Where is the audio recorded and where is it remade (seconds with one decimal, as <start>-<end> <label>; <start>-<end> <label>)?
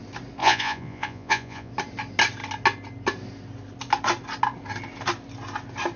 0.0-0.4 recorded; 0.4-1.7 remade; 1.7-6.0 recorded